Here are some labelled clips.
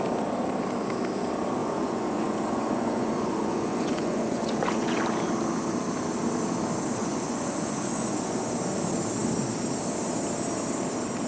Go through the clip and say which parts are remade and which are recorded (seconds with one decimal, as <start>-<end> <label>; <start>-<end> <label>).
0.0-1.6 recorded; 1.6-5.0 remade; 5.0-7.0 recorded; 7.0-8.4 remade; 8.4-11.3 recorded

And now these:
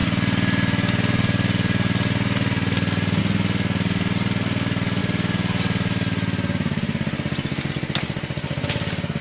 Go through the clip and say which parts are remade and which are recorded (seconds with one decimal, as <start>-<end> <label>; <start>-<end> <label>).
0.0-9.2 recorded

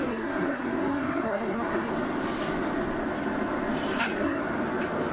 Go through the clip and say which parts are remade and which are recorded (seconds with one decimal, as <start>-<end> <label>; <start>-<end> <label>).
0.0-1.9 remade; 1.9-4.0 recorded; 4.0-4.4 remade; 4.4-5.1 recorded

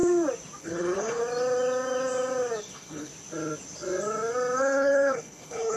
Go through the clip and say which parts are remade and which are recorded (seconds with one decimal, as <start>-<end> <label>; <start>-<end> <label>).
0.0-0.6 recorded; 0.6-1.2 remade; 1.2-2.6 recorded; 2.6-3.1 remade; 3.1-4.6 recorded; 4.6-5.8 remade